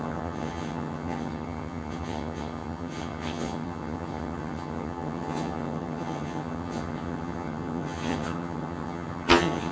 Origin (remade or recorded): remade